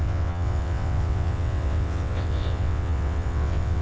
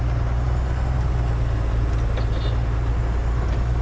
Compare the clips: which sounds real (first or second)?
second